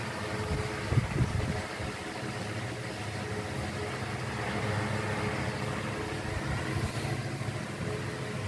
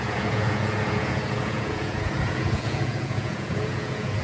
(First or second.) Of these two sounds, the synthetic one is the second